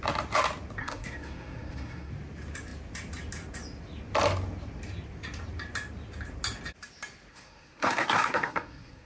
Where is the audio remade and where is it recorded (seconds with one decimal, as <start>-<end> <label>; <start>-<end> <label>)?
0.0-0.8 recorded; 0.8-2.1 remade; 2.1-7.3 recorded; 7.3-9.1 remade